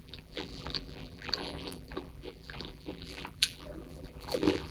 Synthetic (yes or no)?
yes